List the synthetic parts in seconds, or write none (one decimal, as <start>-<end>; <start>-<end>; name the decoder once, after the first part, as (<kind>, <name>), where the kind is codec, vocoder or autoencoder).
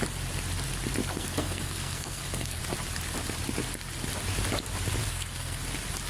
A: 1.0-2.6 (codec, SNAC); 5.0-5.6